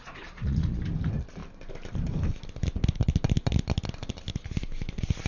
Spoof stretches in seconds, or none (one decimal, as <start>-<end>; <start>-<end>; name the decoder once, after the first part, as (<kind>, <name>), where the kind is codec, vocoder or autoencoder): 0.0-0.8 (vocoder, Vocos)